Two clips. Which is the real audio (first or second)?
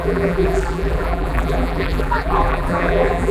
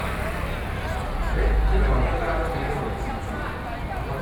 second